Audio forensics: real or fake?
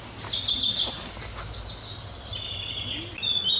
real